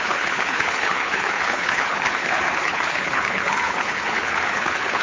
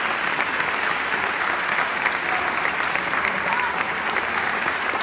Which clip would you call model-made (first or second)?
first